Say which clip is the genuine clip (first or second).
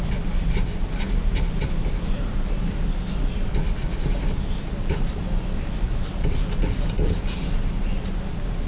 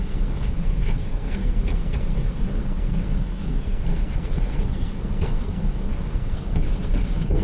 first